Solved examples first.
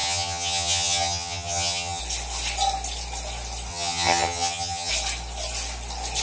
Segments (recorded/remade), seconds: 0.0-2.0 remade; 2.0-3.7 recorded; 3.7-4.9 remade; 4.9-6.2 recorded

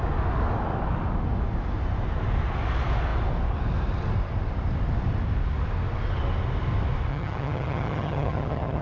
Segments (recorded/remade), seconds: 0.0-7.1 recorded; 7.1-8.8 remade

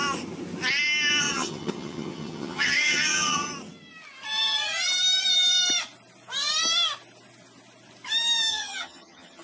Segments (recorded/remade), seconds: 0.0-1.2 recorded; 1.2-3.5 remade; 3.5-8.5 recorded; 8.5-9.4 remade

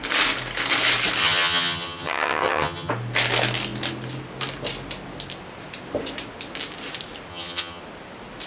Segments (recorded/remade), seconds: 0.0-1.2 recorded; 1.2-2.9 remade; 2.9-7.3 recorded; 7.3-7.8 remade; 7.8-8.5 recorded

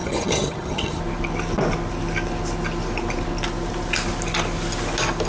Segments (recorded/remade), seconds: 0.0-1.0 remade; 1.0-5.3 recorded

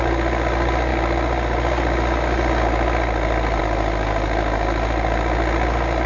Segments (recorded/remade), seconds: 0.0-6.1 recorded

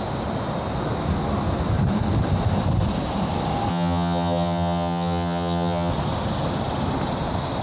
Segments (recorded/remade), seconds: 0.0-3.7 recorded; 3.7-5.9 remade; 5.9-7.6 recorded